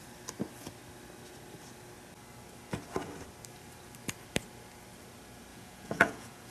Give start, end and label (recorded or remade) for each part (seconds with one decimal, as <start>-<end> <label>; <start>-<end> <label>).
0.0-5.5 recorded; 5.5-6.5 remade

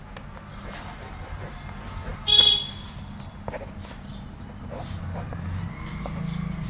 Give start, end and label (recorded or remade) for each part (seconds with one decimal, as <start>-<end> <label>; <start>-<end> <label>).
0.0-0.5 recorded; 0.5-1.5 remade; 1.5-6.7 recorded